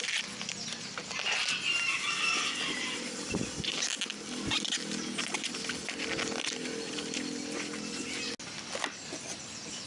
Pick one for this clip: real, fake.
real